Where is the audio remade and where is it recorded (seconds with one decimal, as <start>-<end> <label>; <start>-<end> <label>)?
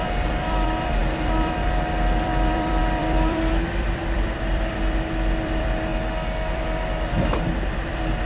0.0-5.9 remade; 5.9-6.5 recorded; 6.5-8.3 remade